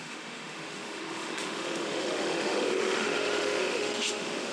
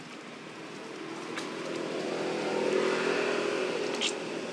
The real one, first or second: second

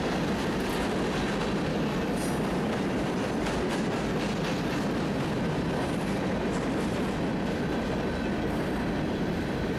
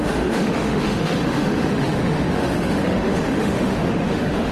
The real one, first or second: first